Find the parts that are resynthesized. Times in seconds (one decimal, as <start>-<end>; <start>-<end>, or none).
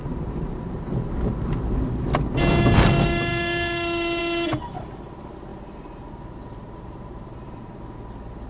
0.0-0.5; 6.6-7.8